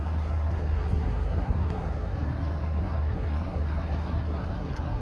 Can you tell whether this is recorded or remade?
remade